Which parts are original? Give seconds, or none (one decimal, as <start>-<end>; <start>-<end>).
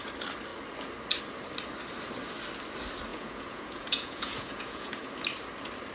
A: 0.0-3.1; 5.1-5.9